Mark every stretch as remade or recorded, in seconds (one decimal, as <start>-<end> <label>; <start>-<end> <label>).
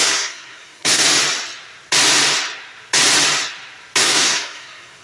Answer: 0.0-1.0 remade; 1.0-4.0 recorded; 4.0-5.0 remade